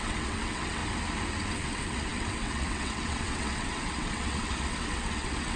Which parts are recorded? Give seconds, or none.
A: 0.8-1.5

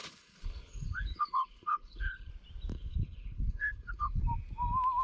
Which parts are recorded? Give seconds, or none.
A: 2.3-2.7; 4.2-5.0